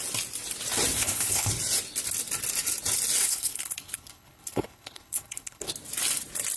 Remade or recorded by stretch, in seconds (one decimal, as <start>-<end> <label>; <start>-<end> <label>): 0.0-1.0 recorded; 1.0-1.5 remade; 1.5-3.2 recorded; 3.2-5.7 remade; 5.7-6.6 recorded